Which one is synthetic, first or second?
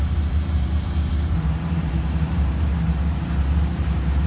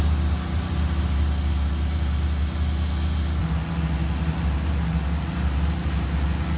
first